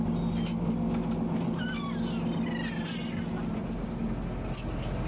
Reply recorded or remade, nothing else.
recorded